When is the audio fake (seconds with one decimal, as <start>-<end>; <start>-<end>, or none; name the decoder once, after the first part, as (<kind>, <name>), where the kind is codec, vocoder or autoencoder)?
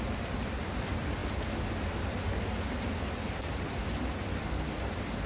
none